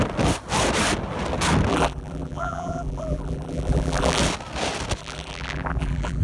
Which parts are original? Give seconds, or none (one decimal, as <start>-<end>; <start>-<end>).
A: 0.0-1.7; 4.2-5.0